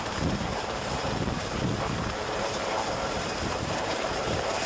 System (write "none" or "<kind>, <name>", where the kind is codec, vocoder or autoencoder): vocoder, BigVGAN v2